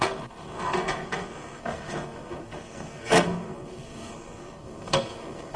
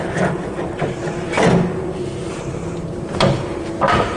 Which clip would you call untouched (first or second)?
second